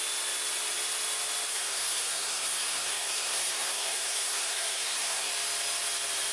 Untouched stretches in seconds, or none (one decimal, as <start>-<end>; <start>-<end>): 0.0-1.5; 5.3-6.3